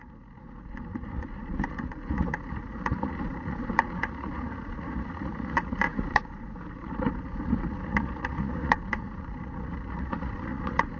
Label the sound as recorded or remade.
remade